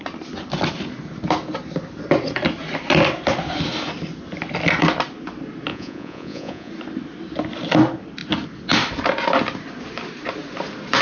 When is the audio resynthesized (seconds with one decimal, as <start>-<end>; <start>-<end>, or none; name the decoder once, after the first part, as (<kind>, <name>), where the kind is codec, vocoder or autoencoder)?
5.7-6.7 (vocoder, Vocos)